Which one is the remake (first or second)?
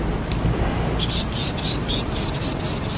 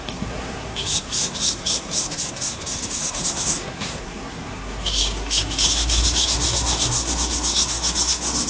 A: second